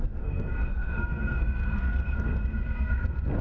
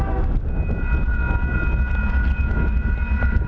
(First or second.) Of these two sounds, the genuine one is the second